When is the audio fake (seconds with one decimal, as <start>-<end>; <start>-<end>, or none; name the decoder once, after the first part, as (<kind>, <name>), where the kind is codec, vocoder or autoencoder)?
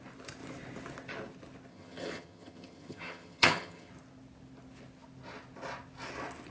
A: 1.7-3.9 (vocoder, HiFi-GAN)